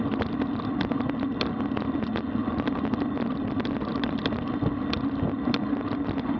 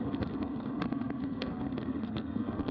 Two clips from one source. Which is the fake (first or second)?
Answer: second